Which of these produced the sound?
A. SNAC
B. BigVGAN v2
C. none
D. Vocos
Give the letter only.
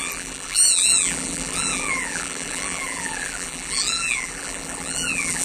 B